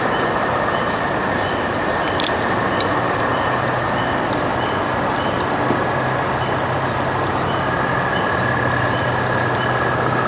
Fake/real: real